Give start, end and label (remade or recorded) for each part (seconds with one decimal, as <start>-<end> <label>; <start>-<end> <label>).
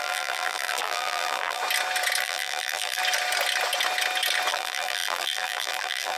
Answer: 0.0-1.6 remade; 1.6-2.2 recorded; 2.2-3.0 remade; 3.0-4.5 recorded; 4.5-6.2 remade